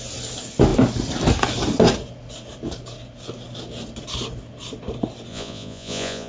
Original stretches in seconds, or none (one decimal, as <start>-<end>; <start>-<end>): 0.0-5.3